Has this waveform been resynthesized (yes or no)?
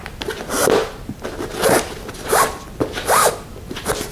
no